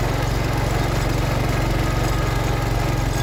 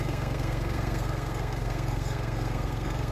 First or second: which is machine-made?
second